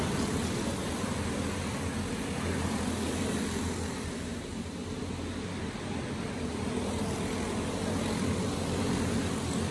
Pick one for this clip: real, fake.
real